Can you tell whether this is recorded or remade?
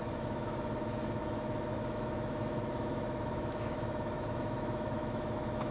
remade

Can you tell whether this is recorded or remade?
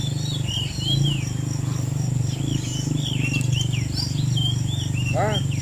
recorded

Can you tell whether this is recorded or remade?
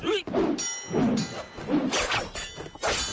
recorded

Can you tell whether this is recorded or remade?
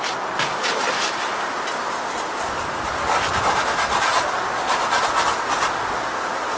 recorded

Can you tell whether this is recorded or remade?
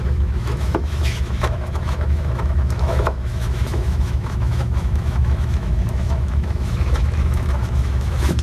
remade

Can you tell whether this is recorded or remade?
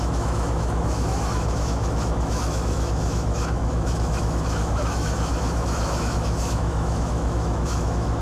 remade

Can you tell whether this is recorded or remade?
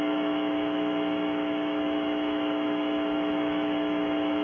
remade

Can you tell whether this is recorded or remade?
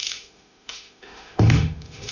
remade